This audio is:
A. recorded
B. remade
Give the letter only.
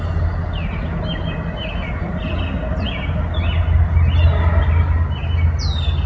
A